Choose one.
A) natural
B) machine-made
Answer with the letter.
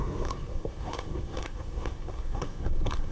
B